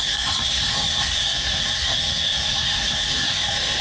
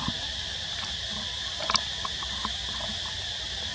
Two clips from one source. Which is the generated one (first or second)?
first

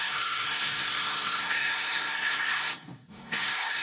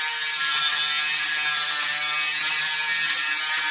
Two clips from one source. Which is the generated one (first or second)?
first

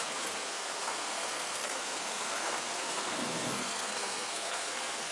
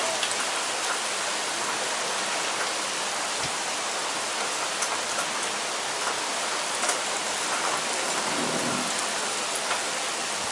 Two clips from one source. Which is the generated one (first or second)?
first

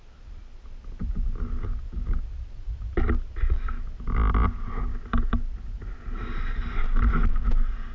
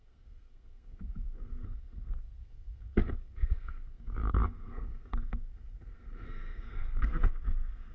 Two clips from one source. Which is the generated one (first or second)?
second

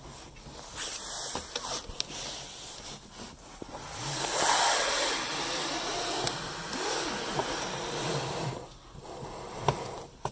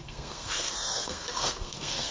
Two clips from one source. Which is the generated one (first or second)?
second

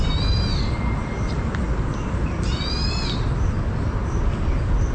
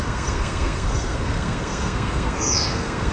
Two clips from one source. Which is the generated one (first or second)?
second